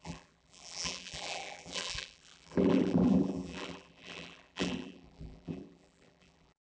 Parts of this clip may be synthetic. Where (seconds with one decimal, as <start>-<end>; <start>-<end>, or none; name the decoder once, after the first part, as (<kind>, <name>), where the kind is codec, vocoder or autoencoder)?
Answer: 0.0-6.6 (vocoder, BigVGAN v2)